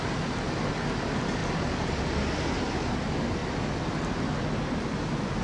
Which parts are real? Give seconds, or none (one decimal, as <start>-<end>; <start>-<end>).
1.4-2.4; 3.4-4.7